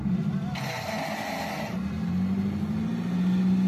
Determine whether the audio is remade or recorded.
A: recorded